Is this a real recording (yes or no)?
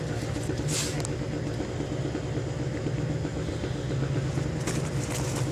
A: yes